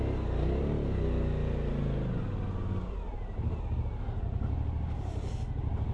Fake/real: real